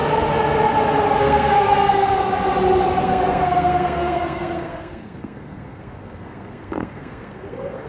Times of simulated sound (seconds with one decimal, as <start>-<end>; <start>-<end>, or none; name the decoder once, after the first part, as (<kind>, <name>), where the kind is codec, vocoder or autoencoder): 1.2-2.2 (codec, SNAC); 3.0-7.9